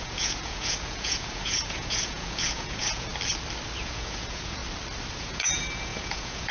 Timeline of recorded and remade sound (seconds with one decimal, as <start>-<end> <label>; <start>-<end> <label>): 0.0-3.1 remade; 3.1-3.8 recorded; 3.8-4.6 remade; 4.6-5.1 recorded; 5.1-6.5 remade